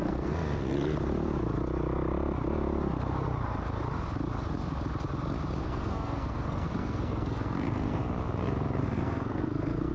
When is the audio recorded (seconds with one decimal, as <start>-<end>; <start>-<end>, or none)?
0.7-5.6; 8.0-8.8